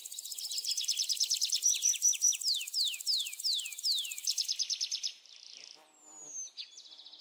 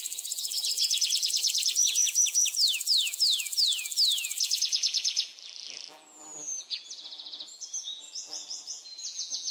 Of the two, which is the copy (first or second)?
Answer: second